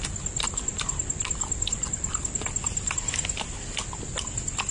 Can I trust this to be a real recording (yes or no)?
yes